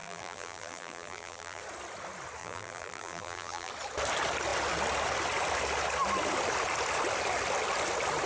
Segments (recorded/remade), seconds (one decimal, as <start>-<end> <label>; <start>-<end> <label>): 0.0-1.6 remade; 1.6-2.4 recorded; 2.4-3.7 remade; 3.7-8.3 recorded